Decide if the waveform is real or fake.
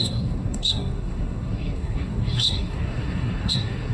fake